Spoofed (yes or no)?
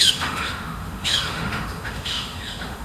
yes